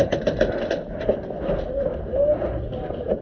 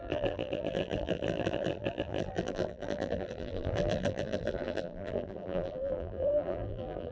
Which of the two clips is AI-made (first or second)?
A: second